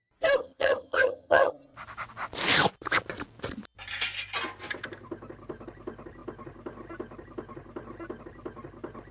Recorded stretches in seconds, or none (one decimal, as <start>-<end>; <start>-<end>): 0.0-0.4; 1.5-9.1